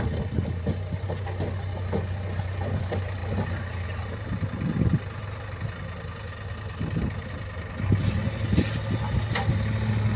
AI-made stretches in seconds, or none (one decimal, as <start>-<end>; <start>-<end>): none